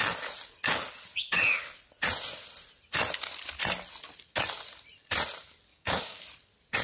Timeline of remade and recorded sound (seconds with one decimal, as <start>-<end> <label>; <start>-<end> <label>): 0.0-5.7 recorded; 5.7-6.2 remade; 6.2-6.8 recorded